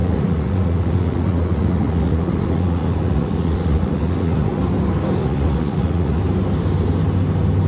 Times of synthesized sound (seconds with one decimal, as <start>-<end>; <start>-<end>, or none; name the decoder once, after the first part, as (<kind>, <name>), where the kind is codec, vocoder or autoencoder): 0.0-4.6 (vocoder, Vocos); 5.2-6.2